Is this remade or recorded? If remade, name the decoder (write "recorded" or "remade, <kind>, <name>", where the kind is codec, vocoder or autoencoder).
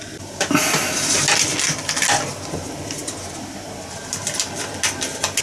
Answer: recorded